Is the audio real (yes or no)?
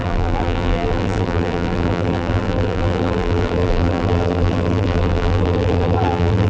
no